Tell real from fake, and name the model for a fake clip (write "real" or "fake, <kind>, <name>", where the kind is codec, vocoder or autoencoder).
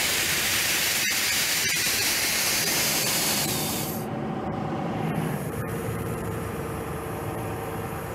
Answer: fake, vocoder, BigVGAN v2